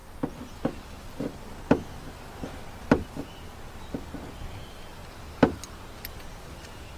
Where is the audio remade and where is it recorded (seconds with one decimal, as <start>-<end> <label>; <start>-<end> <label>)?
0.0-7.0 recorded